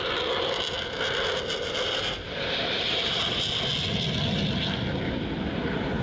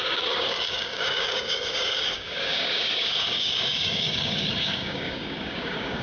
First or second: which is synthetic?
second